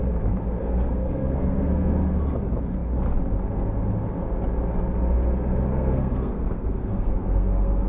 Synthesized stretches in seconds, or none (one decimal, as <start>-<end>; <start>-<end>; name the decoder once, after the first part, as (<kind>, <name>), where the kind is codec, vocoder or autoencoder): 0.6-1.9 (codec, SNAC); 5.7-7.9